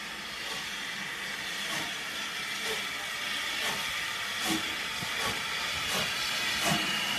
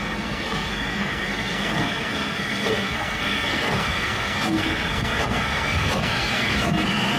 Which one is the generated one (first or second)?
second